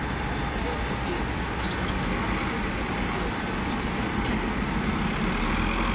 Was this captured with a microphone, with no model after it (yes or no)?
yes